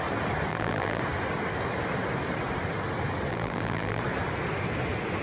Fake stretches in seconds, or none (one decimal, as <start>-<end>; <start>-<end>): 0.5-1.0; 3.3-4.0